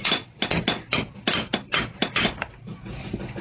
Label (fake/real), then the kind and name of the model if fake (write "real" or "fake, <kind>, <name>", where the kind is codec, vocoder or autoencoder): real